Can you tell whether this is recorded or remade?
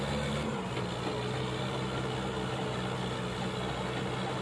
recorded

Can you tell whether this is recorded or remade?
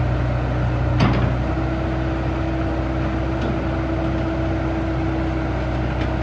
recorded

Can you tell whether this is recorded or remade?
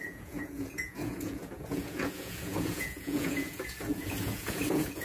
remade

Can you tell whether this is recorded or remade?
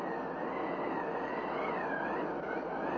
recorded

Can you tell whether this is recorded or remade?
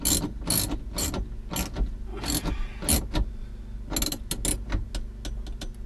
recorded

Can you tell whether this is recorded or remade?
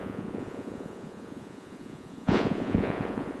remade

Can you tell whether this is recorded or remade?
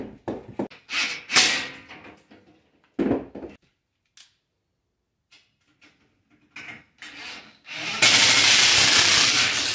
recorded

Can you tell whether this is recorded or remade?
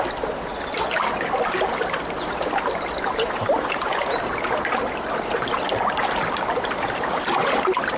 recorded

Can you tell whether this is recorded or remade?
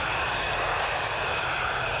recorded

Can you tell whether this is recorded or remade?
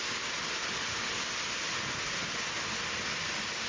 recorded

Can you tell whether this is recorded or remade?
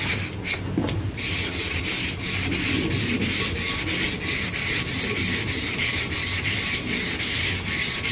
recorded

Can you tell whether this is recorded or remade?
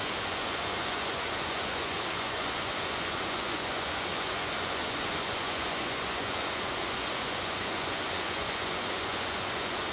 remade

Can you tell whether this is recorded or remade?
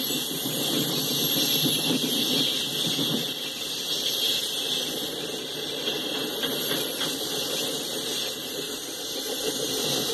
recorded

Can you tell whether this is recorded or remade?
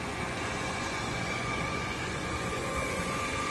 remade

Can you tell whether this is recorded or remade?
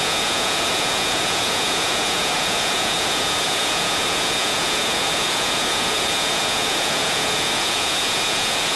remade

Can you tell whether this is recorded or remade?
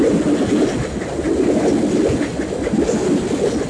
recorded